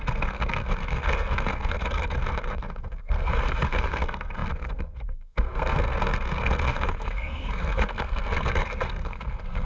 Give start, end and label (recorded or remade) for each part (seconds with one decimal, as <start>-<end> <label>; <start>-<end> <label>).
0.0-9.7 remade